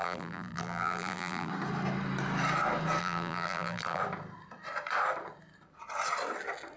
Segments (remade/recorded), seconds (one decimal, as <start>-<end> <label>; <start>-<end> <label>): 0.0-1.5 remade; 1.5-3.0 recorded; 3.0-4.0 remade; 4.0-6.8 recorded